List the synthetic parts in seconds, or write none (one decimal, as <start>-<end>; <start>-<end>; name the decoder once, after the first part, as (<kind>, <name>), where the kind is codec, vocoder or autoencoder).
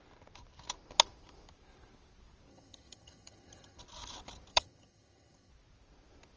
2.5-3.8 (vocoder, HiFi-GAN); 4.5-5.5